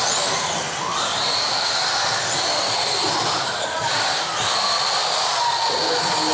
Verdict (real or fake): real